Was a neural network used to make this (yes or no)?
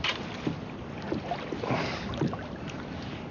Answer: no